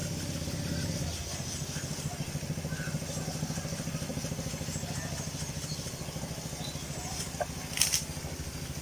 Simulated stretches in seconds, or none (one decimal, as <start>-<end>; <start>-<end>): none